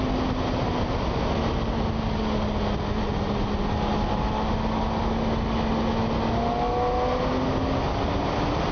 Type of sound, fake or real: real